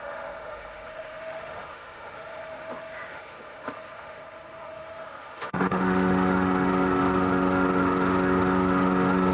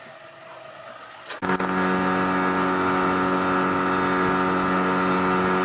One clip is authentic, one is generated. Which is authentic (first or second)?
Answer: second